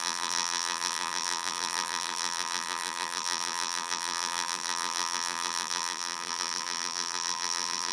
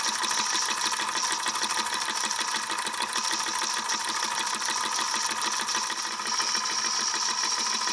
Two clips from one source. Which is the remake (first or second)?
first